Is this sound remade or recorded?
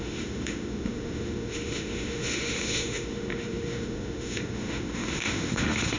remade